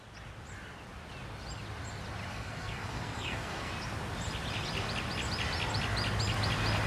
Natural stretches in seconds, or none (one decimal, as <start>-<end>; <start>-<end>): 0.0-2.3; 3.7-6.9